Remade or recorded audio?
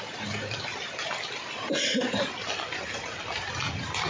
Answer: recorded